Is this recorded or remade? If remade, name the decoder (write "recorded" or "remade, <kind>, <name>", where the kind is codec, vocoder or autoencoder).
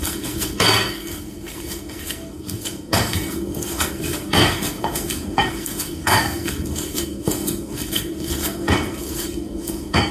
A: remade, codec, SNAC